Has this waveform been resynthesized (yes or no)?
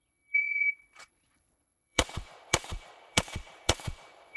yes